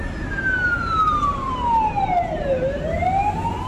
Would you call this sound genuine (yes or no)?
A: yes